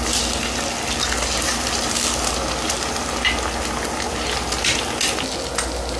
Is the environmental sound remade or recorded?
recorded